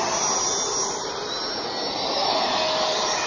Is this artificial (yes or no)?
no